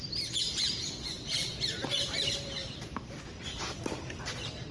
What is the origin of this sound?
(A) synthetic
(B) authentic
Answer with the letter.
A